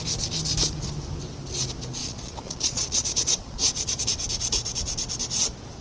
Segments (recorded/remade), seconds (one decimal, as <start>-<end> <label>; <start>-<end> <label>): 0.0-2.0 recorded; 2.0-4.0 remade; 4.0-5.8 recorded